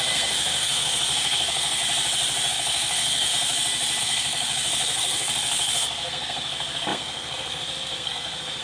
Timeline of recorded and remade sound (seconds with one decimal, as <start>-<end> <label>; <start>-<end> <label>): 0.0-1.8 remade; 1.8-2.5 recorded; 2.5-3.3 remade; 3.3-4.0 recorded; 4.0-8.6 remade